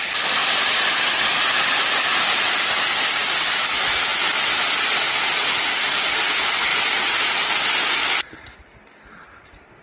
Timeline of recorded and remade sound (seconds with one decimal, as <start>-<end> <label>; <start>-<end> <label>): 0.0-9.8 recorded